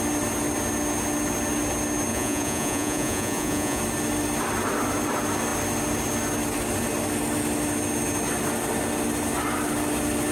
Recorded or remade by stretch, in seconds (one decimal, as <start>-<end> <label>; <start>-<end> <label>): 0.0-2.1 recorded; 2.1-3.8 remade; 3.8-10.3 recorded

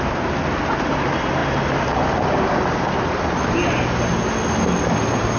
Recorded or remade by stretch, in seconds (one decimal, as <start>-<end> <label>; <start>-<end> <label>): 0.0-5.4 recorded